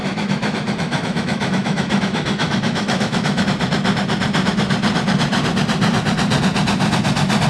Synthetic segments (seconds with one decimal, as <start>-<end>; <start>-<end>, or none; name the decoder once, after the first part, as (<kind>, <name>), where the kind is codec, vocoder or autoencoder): 0.0-3.4 (autoencoder, DAC-VAE)